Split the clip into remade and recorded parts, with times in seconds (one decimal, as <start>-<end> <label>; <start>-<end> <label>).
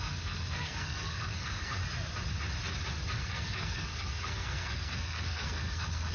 0.0-1.8 remade; 1.8-3.2 recorded; 3.2-6.1 remade